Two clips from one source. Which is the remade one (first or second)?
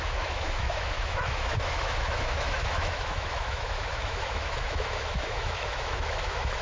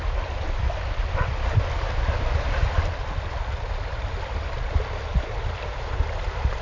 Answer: first